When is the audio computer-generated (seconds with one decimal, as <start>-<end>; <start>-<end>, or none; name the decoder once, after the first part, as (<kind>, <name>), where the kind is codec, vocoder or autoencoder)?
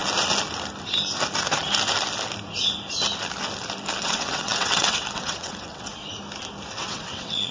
4.0-6.0 (vocoder, WaveNeXt); 6.7-7.5